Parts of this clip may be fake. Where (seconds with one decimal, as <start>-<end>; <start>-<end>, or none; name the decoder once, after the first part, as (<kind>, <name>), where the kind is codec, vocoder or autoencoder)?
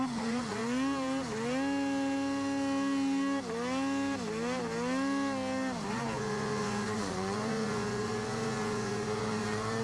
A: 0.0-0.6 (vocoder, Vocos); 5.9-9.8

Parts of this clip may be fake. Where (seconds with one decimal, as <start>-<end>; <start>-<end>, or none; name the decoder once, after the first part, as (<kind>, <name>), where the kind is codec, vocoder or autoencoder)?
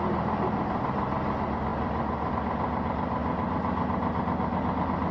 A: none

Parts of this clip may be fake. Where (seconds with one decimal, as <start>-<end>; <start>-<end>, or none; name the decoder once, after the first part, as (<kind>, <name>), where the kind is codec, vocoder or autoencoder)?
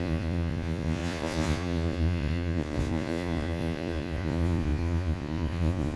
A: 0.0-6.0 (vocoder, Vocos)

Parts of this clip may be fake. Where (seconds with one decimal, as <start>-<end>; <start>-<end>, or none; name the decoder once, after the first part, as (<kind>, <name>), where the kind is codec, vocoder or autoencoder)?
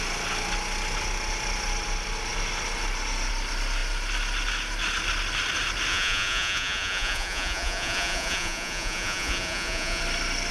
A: 5.9-10.0 (vocoder, Vocos)